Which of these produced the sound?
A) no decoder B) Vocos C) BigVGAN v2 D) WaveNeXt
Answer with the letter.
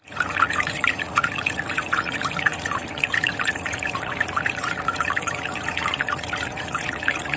B